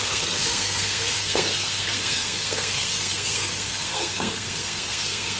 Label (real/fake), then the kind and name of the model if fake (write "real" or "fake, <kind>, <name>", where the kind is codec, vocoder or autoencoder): fake, codec, SNAC